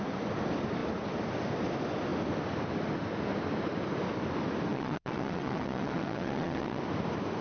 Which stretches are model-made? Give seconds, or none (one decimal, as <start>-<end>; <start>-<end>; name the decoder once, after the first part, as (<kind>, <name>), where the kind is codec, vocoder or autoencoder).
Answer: 4.7-6.8 (vocoder, WaveNeXt)